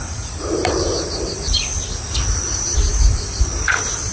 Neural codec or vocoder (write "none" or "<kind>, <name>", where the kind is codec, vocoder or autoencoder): vocoder, BigVGAN v2